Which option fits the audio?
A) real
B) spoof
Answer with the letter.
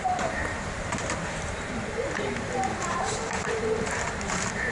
B